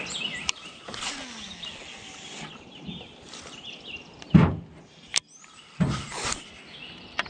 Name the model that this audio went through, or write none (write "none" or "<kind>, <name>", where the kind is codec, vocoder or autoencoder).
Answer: none